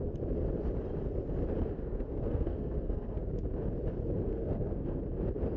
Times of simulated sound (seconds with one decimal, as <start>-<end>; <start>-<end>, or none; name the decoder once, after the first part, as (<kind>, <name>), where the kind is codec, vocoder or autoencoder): 1.8-3.3 (codec, SNAC); 4.3-5.0